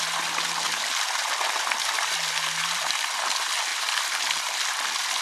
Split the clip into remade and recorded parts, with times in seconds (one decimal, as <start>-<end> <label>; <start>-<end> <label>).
0.0-3.7 recorded; 3.7-4.4 remade; 4.4-5.2 recorded